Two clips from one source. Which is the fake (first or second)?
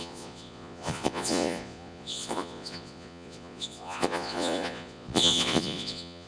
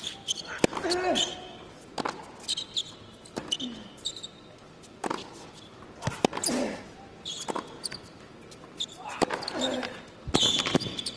first